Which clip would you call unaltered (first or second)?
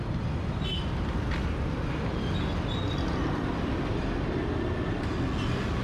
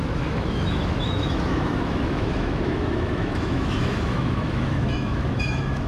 first